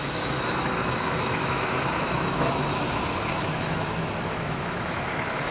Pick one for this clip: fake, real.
fake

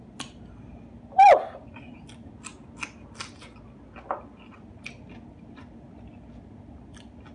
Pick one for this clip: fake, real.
real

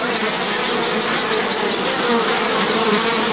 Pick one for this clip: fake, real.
real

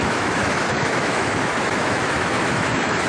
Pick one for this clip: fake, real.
fake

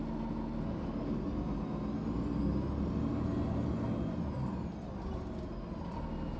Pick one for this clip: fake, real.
real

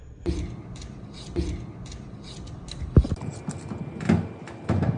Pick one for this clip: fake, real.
real